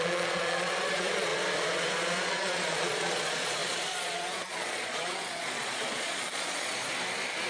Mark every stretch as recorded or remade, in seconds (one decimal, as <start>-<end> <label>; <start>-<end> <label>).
0.0-1.3 remade; 1.3-2.2 recorded; 2.2-6.8 remade; 6.8-7.5 recorded